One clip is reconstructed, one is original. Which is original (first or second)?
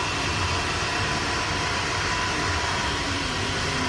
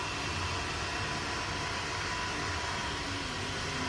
second